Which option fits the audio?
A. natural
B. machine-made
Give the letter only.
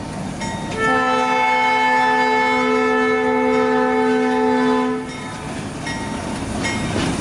A